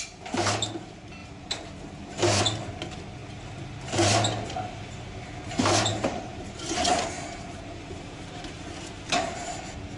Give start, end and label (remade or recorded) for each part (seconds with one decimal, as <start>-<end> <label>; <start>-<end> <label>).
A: 0.0-1.2 recorded; 1.2-2.4 remade; 2.4-5.9 recorded; 5.9-9.6 remade; 9.6-10.0 recorded